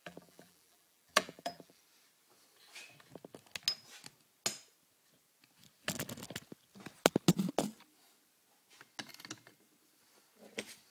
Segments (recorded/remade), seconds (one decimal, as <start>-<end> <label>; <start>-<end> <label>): 0.0-1.8 remade; 1.8-10.9 recorded